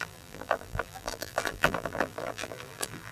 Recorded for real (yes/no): no